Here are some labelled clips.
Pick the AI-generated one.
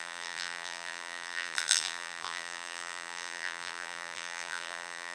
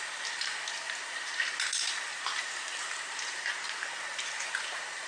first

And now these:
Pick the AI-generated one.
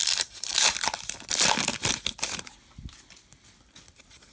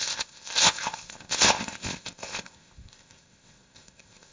second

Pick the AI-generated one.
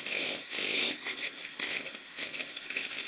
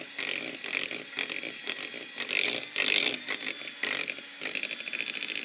first